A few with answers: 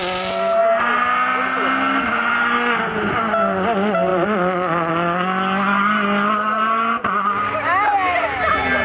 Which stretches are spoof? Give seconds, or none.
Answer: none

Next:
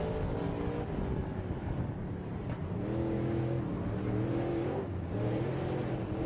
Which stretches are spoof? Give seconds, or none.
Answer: 3.0-3.6 (codec, DAC); 4.5-5.5

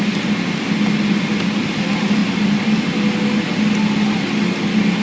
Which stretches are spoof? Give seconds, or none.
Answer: none

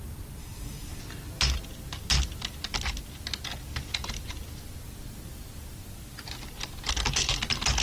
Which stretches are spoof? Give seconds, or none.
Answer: 0.4-1.0 (codec, DAC)

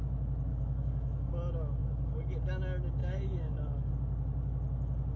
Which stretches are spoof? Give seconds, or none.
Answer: 0.5-1.3 (codec, DAC); 1.8-2.5; 3.0-3.9